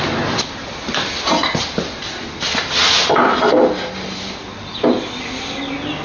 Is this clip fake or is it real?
real